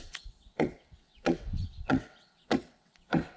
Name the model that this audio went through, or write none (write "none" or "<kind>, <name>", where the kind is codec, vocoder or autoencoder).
vocoder, WaveNeXt